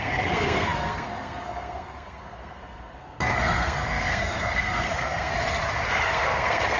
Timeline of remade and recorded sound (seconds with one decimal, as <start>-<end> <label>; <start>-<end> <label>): 0.0-5.3 remade; 5.3-5.9 recorded; 5.9-6.8 remade